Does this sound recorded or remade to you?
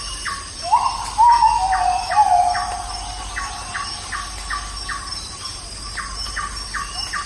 recorded